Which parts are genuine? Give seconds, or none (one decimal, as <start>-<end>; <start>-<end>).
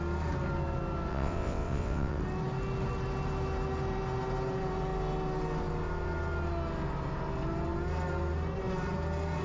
0.0-1.1; 2.2-9.4